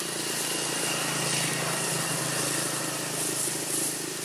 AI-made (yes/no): no